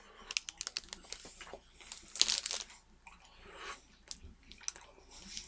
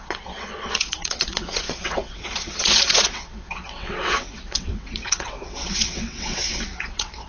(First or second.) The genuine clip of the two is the first